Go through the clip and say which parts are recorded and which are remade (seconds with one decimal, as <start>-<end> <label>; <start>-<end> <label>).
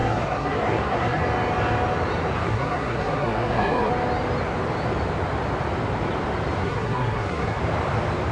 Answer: 0.0-1.2 remade; 1.2-2.4 recorded; 2.4-3.9 remade; 3.9-6.6 recorded; 6.6-7.6 remade; 7.6-8.3 recorded